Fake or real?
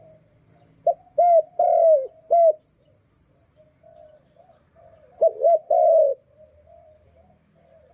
real